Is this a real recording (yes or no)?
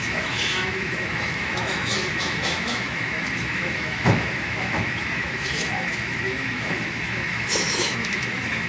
no